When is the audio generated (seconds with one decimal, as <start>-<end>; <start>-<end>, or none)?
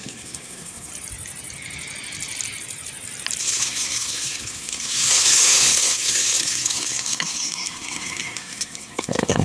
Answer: 0.0-0.9; 3.4-9.4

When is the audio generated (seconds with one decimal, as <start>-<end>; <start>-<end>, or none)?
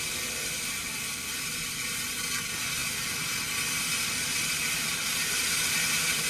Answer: none